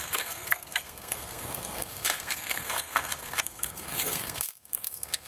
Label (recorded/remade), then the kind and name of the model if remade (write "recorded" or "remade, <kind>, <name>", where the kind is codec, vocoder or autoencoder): remade, codec, SNAC